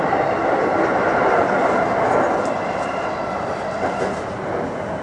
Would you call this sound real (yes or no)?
yes